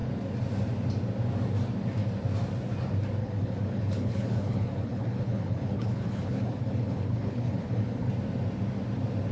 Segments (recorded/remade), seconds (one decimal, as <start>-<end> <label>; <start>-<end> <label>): 0.0-3.2 recorded; 3.2-8.1 remade; 8.1-9.3 recorded